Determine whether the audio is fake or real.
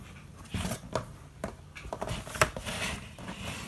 real